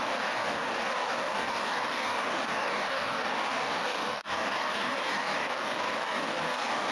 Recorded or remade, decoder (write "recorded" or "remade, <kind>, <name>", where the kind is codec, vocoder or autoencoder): remade, codec, DAC